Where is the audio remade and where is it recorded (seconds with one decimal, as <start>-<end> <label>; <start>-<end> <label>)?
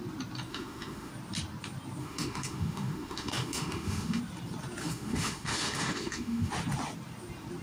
0.0-0.5 recorded; 0.5-1.1 remade; 1.1-2.0 recorded; 2.0-4.2 remade; 4.2-4.8 recorded; 4.8-6.5 remade; 6.5-7.6 recorded